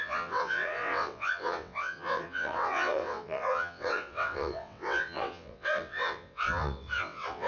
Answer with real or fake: fake